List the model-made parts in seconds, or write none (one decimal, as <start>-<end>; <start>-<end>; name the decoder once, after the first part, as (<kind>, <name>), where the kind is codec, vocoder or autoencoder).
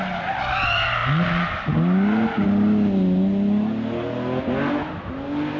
none